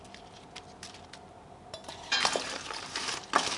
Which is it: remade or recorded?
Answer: recorded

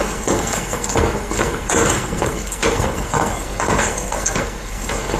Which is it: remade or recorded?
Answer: remade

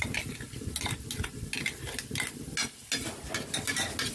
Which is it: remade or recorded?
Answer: recorded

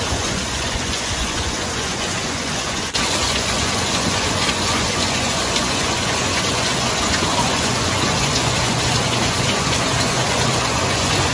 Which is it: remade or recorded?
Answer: remade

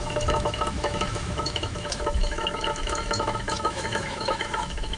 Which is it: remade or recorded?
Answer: remade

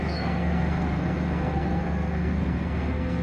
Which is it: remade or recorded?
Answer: remade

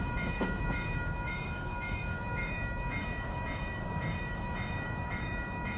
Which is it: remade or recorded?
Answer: remade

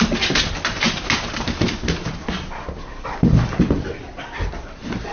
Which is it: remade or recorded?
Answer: recorded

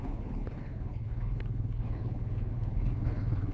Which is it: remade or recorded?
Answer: remade